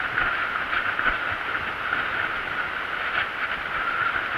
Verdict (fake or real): real